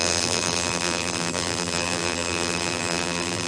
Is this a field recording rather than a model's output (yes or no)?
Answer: no